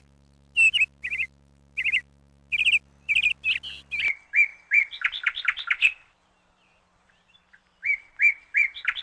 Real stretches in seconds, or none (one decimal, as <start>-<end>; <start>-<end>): 0.0-4.5